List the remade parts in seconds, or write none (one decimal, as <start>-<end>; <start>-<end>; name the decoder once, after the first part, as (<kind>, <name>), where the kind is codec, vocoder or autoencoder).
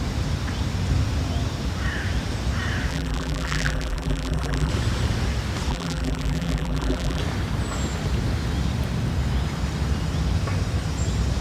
2.9-4.7 (vocoder, BigVGAN v2); 5.7-7.2